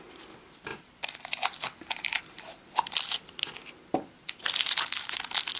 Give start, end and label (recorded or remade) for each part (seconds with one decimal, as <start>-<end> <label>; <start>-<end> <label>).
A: 0.0-5.6 recorded